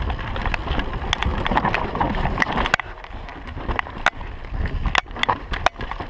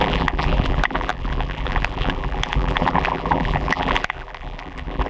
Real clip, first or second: first